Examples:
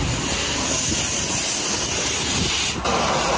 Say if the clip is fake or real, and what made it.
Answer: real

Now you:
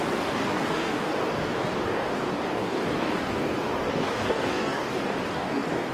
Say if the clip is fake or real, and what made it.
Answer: fake, codec, DAC